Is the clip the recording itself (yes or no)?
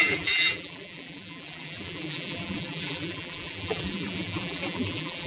no